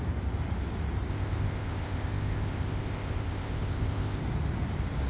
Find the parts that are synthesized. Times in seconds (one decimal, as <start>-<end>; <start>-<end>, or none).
1.1-4.2